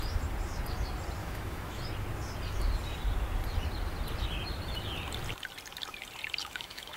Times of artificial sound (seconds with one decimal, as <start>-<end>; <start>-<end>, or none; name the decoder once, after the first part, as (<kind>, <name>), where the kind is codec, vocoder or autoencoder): 1.2-1.8 (autoencoder, DAC-VAE); 6.4-7.0